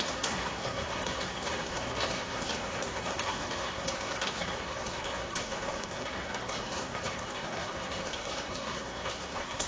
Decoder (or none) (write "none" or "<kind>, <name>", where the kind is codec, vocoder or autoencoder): codec, SNAC